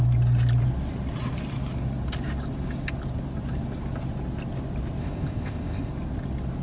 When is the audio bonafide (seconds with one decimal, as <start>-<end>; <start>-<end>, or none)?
0.0-5.0; 5.9-6.6